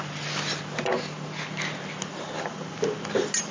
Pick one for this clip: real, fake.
real